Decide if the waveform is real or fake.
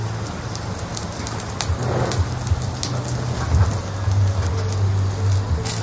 real